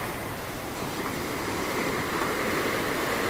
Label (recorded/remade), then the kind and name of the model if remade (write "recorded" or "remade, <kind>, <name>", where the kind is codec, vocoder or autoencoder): recorded